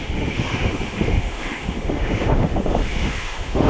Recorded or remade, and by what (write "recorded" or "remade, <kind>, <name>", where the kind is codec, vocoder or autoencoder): remade, autoencoder, DAC-VAE